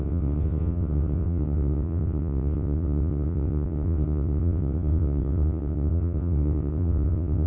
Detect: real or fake fake